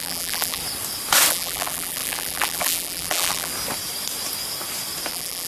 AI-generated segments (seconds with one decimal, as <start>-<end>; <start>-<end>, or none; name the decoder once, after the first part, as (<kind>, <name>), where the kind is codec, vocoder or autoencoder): 0.0-0.6 (vocoder, BigVGAN v2); 1.3-3.5; 5.1-5.5